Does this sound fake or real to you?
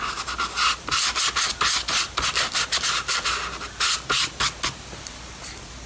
real